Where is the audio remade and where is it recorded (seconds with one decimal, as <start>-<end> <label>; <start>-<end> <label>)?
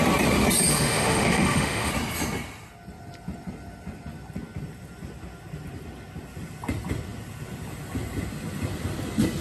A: 0.0-0.7 recorded; 0.7-1.9 remade; 1.9-9.4 recorded